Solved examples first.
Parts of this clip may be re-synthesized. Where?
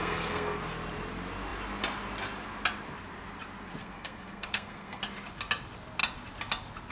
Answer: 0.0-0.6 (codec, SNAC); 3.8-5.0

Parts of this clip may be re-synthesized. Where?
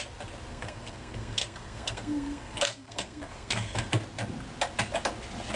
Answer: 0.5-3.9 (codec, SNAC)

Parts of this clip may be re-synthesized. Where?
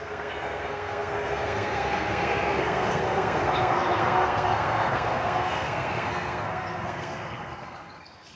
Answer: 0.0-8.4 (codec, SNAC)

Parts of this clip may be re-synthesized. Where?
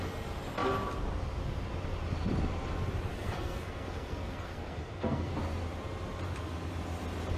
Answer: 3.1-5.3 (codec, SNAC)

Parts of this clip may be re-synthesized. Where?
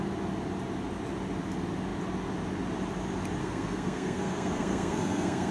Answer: 3.4-5.5 (codec, SNAC)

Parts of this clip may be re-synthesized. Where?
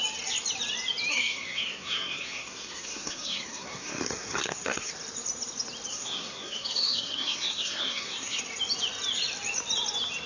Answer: 1.1-4.9 (codec, SNAC); 5.9-8.4